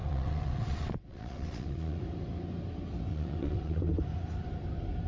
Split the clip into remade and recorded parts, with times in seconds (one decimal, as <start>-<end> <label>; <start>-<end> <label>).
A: 0.0-2.0 remade; 2.0-3.1 recorded; 3.1-3.9 remade; 3.9-5.1 recorded